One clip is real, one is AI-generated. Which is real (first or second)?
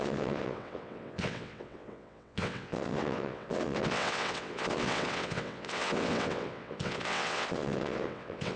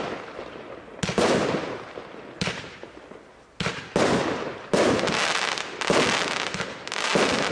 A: second